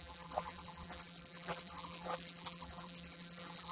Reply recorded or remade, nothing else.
remade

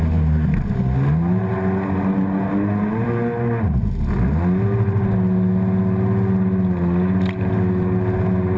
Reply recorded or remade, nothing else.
recorded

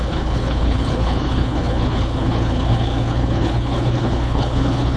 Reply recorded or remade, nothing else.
remade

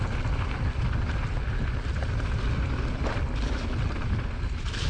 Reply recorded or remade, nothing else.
recorded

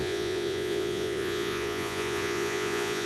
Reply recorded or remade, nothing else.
remade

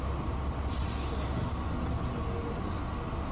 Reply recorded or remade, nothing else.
recorded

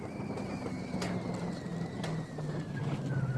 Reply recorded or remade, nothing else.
recorded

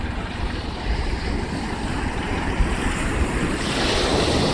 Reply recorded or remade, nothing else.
recorded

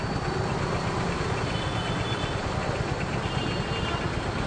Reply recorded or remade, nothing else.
recorded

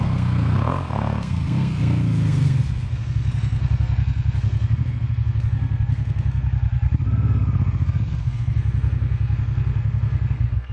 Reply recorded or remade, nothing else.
remade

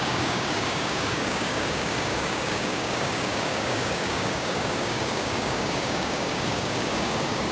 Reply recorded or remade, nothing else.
remade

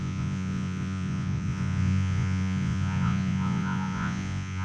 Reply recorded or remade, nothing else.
remade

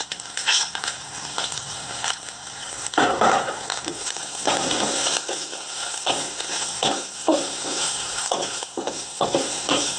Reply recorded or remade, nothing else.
remade